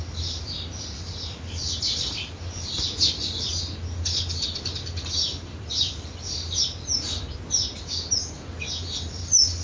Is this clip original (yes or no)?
yes